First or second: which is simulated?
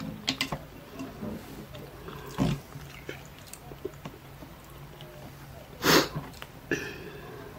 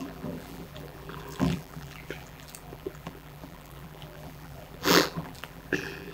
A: second